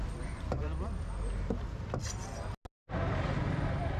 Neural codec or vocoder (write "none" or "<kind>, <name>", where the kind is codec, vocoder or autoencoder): none